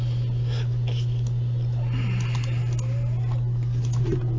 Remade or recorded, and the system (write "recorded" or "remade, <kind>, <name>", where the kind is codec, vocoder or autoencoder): recorded